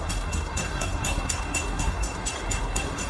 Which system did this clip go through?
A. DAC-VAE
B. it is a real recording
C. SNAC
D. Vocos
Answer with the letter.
C